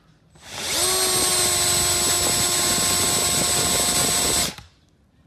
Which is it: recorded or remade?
recorded